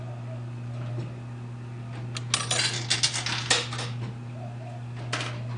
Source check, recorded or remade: recorded